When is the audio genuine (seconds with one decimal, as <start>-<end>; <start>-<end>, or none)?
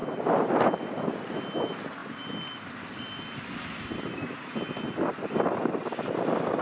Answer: 0.0-6.6